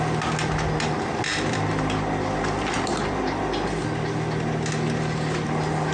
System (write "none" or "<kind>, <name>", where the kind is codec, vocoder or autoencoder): none